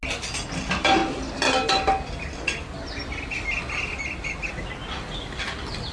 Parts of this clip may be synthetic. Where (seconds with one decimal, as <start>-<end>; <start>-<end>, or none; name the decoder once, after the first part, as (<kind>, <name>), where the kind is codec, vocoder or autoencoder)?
none